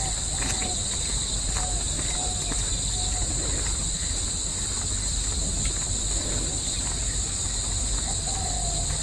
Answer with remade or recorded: recorded